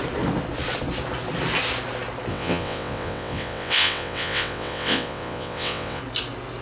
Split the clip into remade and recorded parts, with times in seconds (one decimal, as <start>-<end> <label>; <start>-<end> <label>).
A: 0.0-2.3 recorded; 2.3-6.0 remade; 6.0-6.6 recorded